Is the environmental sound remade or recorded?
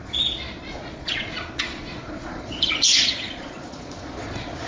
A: remade